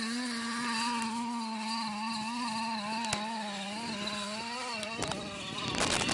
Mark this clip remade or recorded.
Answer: recorded